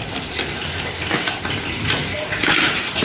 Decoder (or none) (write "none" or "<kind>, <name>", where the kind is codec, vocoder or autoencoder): none